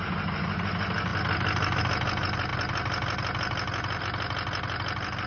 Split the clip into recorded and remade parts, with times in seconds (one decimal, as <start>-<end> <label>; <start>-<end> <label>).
0.0-5.3 recorded